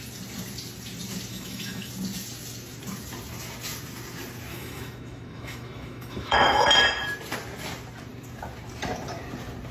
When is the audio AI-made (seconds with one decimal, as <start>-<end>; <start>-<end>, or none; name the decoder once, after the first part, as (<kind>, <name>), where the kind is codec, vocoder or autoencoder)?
1.3-1.9 (autoencoder, DAC-VAE); 4.5-6.7